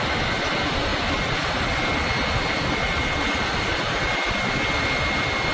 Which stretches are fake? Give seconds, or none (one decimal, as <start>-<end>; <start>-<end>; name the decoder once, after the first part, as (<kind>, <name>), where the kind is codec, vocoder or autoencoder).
3.7-4.2 (vocoder, BigVGAN v2)